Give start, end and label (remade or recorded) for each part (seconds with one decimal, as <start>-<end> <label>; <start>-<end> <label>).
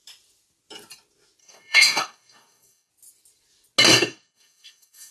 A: 0.0-1.4 recorded; 1.4-2.9 remade; 2.9-3.9 recorded; 3.9-5.1 remade